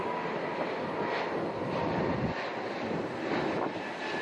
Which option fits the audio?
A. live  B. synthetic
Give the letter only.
A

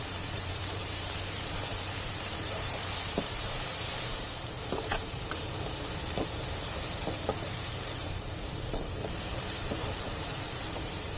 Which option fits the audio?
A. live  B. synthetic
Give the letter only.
B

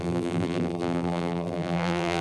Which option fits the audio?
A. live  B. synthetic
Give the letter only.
B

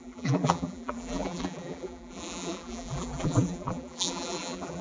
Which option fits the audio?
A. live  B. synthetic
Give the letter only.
B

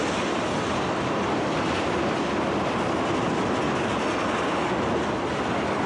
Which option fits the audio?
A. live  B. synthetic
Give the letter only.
A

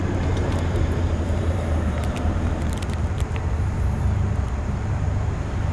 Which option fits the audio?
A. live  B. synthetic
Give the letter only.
B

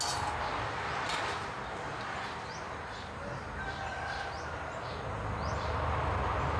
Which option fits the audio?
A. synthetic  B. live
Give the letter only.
B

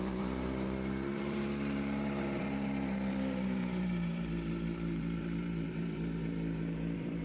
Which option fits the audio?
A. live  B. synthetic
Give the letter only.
B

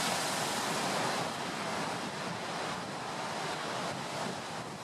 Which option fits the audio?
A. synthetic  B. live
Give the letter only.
B